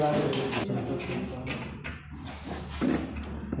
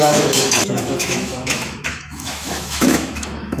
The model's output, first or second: second